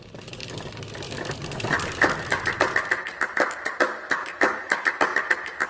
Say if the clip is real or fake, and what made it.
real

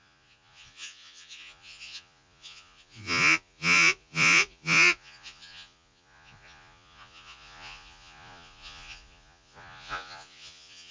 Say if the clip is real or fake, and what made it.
fake, vocoder, Vocos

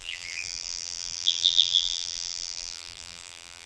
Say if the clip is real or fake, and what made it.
fake, vocoder, BigVGAN v2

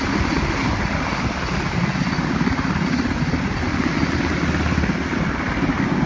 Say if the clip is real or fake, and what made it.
real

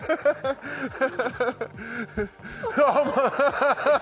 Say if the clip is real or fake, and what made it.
real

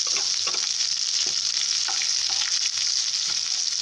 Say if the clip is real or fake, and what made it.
real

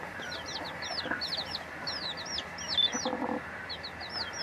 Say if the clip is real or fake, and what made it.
real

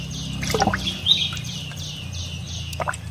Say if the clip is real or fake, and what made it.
real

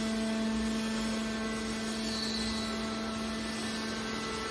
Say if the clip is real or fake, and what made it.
real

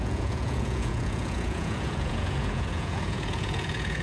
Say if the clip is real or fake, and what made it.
fake, vocoder, Vocos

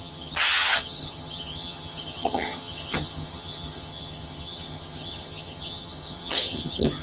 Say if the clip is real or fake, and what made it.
fake, vocoder, HiFi-GAN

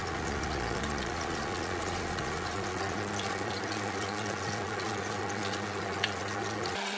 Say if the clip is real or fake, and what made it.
fake, vocoder, Vocos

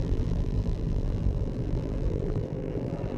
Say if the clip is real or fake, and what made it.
fake, vocoder, BigVGAN v2